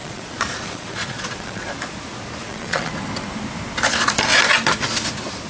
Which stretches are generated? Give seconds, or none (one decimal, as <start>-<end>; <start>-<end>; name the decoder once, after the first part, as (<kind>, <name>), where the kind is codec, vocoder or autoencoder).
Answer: 0.0-1.7 (vocoder, Vocos); 2.4-2.9